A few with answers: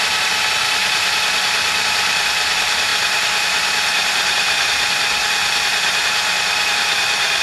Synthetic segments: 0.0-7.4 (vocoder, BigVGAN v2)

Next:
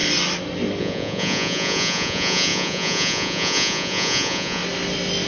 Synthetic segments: 0.8-4.6 (vocoder, Vocos)

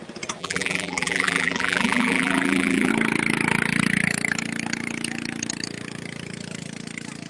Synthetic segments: 0.4-2.9 (vocoder, BigVGAN v2)